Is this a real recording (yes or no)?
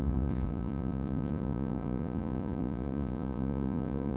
no